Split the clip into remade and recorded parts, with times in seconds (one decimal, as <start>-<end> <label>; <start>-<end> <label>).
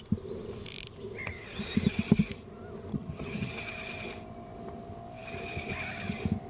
0.0-2.9 recorded; 2.9-3.5 remade; 3.5-6.5 recorded